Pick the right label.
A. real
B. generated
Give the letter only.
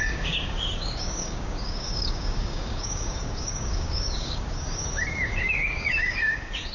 B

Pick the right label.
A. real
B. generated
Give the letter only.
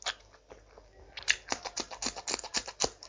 A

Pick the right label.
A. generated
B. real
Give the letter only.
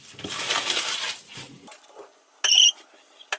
B